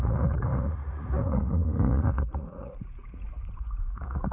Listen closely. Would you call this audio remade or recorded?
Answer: remade